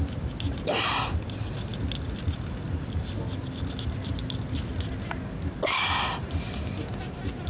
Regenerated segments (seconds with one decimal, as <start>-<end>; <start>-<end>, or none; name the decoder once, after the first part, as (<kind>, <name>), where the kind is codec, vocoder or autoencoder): none

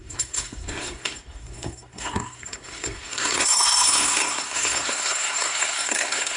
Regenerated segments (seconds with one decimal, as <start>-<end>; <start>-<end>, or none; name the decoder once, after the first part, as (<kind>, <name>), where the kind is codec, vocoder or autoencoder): 0.0-6.4 (codec, SNAC)

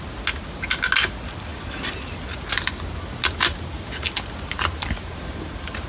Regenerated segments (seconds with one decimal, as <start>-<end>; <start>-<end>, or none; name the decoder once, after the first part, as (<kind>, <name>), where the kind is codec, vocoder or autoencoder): none

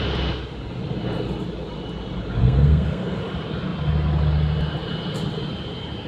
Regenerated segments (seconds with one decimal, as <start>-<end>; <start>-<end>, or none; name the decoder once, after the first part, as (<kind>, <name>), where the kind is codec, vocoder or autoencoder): 2.4-3.2 (codec, SNAC)

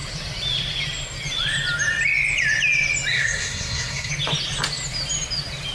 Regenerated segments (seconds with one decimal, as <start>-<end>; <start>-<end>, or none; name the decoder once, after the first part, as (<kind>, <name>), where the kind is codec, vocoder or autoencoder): 3.1-4.1 (codec, SNAC)